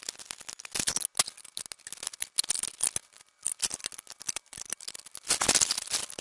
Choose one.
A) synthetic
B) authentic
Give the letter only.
B